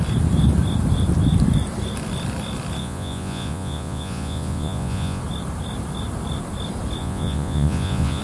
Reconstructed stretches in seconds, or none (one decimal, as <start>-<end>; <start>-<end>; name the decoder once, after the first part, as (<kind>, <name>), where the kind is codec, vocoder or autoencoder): 2.8-5.2 (vocoder, Vocos); 7.0-8.2